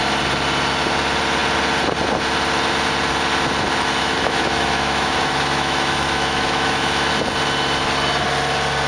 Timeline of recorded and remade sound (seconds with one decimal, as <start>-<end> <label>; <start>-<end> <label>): 0.0-4.0 recorded; 4.0-7.1 remade; 7.1-8.9 recorded